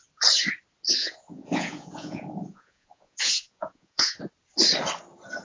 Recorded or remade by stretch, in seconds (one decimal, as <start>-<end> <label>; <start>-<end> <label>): 0.0-1.0 recorded; 1.0-4.2 remade; 4.2-5.4 recorded